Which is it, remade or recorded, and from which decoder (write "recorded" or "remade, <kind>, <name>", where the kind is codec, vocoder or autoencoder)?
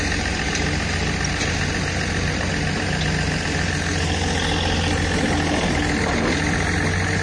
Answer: recorded